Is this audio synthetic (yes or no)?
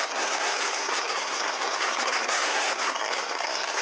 yes